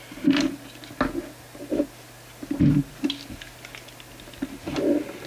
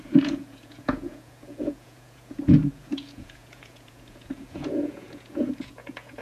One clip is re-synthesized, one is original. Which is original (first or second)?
first